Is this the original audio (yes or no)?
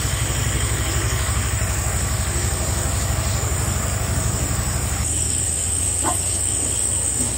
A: no